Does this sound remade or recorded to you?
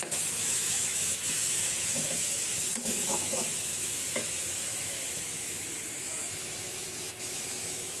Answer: remade